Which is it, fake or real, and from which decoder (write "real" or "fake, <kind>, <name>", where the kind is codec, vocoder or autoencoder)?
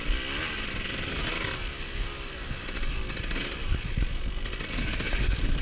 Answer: real